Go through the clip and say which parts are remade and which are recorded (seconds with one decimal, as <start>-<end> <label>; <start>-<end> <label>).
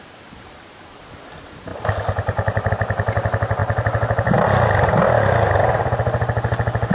0.0-6.9 recorded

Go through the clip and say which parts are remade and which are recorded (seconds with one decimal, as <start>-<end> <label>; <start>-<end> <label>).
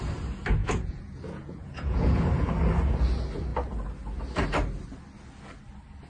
0.0-0.6 recorded; 0.6-2.3 remade; 2.3-6.1 recorded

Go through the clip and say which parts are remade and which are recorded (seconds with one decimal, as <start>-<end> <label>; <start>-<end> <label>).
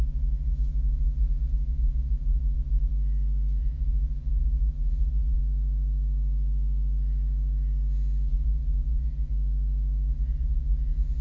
0.0-2.9 remade; 2.9-3.6 recorded; 3.6-5.4 remade; 5.4-8.3 recorded; 8.3-9.3 remade; 9.3-10.1 recorded; 10.1-11.2 remade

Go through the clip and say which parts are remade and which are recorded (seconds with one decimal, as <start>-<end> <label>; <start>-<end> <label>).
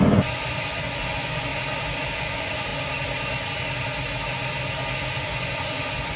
0.0-1.5 remade; 1.5-2.2 recorded; 2.2-2.7 remade; 2.7-5.2 recorded; 5.2-6.2 remade